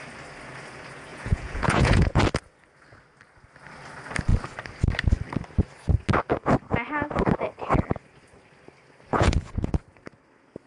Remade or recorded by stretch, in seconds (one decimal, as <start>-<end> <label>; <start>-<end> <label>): 0.0-1.1 recorded; 1.1-2.2 remade; 2.2-9.1 recorded; 9.1-9.7 remade; 9.7-10.7 recorded